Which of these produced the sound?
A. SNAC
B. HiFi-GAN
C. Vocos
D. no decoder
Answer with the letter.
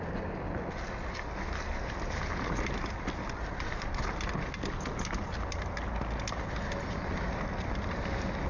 D